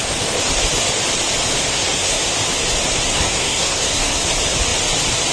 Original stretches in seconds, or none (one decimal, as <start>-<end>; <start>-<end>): 0.0-1.7; 2.2-3.1; 4.2-5.3